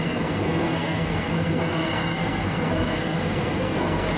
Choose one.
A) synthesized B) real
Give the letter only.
A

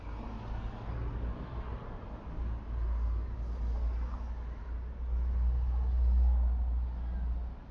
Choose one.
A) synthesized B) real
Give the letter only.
B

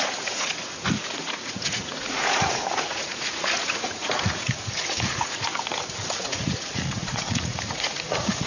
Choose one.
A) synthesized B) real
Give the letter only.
A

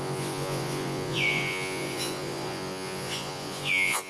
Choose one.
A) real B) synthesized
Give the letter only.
B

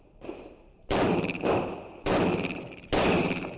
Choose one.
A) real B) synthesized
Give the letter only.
B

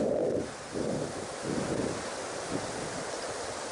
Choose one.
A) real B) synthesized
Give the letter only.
A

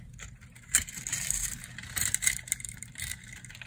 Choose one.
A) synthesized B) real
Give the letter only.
A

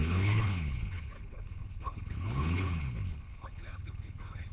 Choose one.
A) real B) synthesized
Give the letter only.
B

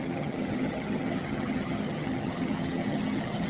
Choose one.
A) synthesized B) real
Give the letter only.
A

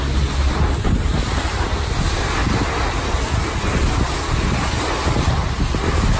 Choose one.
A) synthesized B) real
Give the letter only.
B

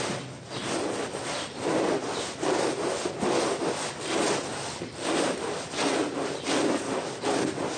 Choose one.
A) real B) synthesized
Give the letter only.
A